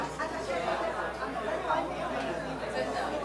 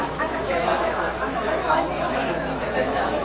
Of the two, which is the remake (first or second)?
second